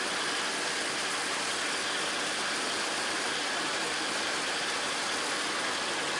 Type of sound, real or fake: real